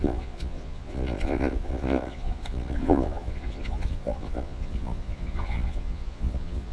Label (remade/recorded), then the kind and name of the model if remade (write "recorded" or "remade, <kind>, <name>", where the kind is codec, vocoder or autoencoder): remade, vocoder, Vocos